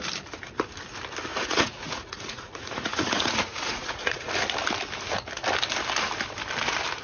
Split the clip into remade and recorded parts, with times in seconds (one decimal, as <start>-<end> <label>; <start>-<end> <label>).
0.0-1.3 recorded; 1.3-4.3 remade; 4.3-7.0 recorded